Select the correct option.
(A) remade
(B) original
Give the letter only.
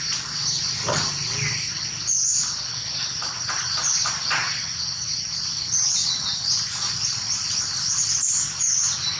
B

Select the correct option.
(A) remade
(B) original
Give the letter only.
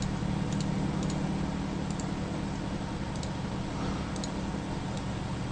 B